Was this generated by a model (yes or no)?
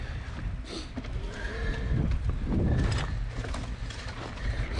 no